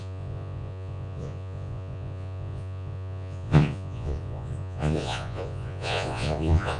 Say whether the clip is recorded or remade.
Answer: remade